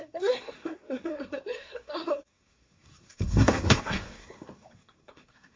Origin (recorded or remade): remade